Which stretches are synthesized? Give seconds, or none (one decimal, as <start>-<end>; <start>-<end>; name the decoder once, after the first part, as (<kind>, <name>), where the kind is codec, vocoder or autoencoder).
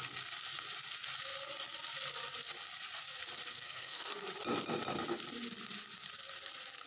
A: 3.5-4.1 (codec, SNAC)